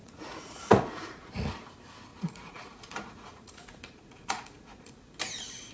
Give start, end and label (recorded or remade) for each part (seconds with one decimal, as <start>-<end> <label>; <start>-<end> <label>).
0.0-1.3 remade; 1.3-2.1 recorded; 2.1-4.9 remade; 4.9-5.7 recorded